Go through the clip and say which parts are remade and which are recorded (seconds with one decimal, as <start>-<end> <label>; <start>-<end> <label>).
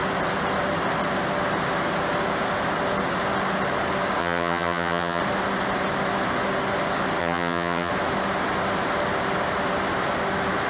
0.0-4.2 recorded; 4.2-5.2 remade; 5.2-7.2 recorded; 7.2-7.9 remade; 7.9-10.7 recorded